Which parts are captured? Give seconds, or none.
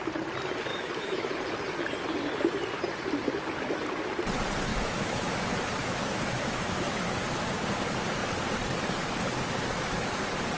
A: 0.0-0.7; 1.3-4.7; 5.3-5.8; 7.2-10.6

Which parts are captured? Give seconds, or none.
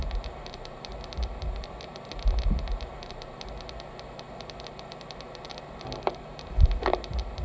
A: 0.0-7.4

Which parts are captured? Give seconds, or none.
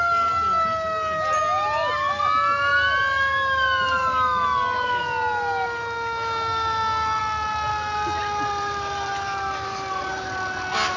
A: 0.0-7.7; 10.2-11.0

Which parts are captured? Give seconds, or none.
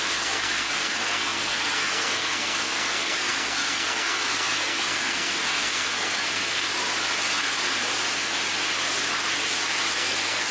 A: 6.7-9.9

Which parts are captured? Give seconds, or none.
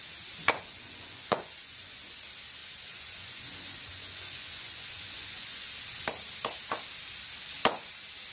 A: 0.0-0.4; 2.1-2.6; 5.7-8.3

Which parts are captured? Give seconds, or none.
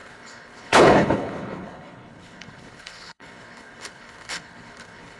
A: none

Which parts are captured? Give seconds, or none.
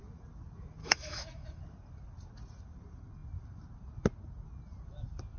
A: 0.0-0.8; 1.6-5.4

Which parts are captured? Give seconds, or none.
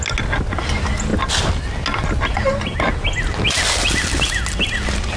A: 0.0-5.2